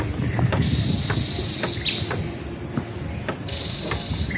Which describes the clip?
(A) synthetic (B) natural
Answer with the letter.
B